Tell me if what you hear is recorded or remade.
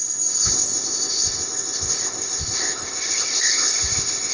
remade